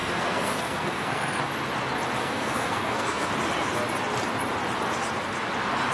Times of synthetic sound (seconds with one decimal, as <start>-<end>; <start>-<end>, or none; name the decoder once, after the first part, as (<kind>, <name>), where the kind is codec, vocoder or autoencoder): 0.0-1.4 (codec, SNAC); 2.2-3.3